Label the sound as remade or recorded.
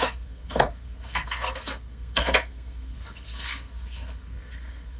remade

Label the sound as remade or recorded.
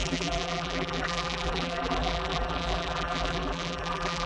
remade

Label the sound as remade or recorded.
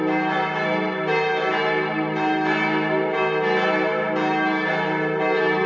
recorded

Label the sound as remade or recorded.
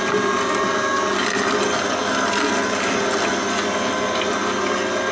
recorded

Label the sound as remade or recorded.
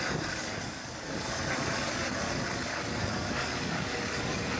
remade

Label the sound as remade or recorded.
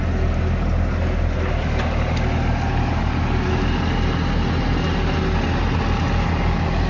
recorded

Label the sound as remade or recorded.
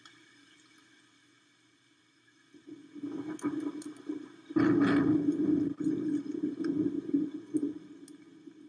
recorded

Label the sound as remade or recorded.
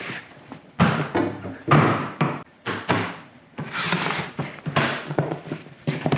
remade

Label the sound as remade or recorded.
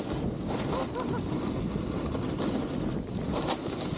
recorded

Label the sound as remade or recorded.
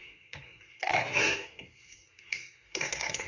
remade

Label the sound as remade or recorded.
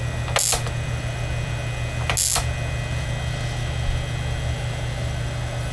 recorded